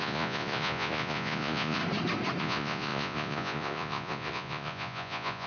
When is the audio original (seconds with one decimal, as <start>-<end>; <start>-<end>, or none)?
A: 1.8-2.4